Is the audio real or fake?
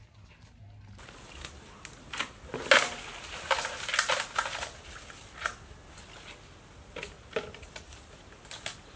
real